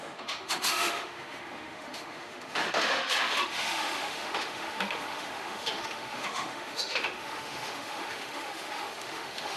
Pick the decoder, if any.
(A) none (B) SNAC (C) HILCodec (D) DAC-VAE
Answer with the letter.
D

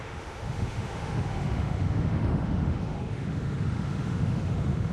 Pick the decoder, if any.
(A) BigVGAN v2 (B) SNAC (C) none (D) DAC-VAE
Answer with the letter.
D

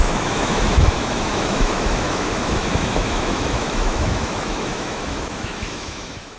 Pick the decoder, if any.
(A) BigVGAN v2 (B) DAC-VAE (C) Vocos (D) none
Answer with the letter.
B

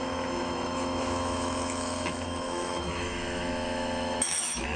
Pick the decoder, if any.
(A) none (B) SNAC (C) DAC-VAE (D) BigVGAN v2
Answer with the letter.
C